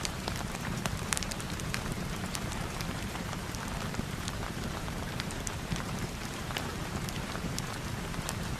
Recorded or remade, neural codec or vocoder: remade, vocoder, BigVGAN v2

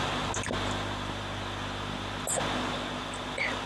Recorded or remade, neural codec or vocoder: recorded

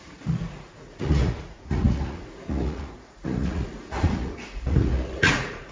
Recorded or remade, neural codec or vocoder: remade, vocoder, Vocos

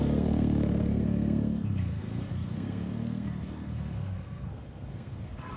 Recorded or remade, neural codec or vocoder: remade, codec, SNAC